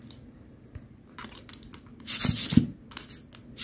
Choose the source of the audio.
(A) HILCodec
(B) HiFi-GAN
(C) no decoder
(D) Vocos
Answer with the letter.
C